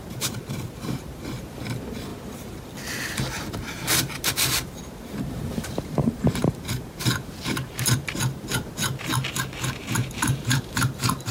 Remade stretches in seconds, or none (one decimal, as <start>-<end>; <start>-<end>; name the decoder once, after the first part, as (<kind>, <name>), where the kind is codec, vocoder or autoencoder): 0.0-2.1 (vocoder, BigVGAN v2); 3.5-9.1; 9.8-11.3